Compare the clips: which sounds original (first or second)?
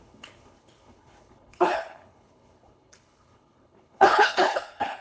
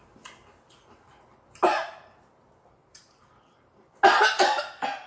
second